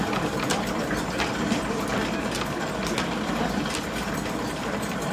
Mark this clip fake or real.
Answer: real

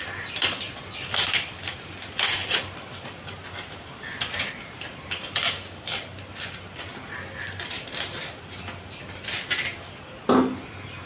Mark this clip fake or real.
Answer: real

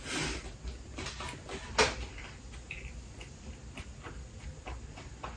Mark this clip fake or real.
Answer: real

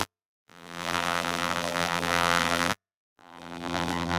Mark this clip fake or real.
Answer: fake